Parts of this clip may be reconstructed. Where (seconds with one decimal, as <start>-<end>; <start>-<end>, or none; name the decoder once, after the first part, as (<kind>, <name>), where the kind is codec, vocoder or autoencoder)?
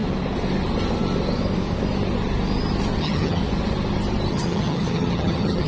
3.0-3.4 (vocoder, HiFi-GAN); 4.3-5.7